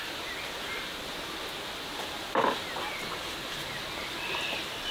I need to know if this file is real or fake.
real